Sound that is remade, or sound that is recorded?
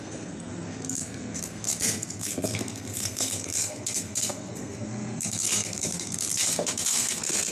remade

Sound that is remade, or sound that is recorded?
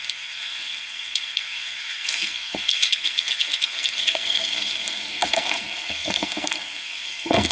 remade